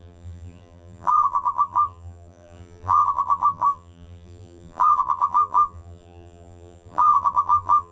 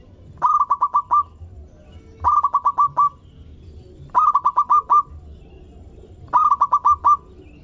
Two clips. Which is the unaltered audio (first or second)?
second